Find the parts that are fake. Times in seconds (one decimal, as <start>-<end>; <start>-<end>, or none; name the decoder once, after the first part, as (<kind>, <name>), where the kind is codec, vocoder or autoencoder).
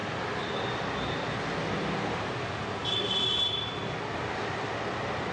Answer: none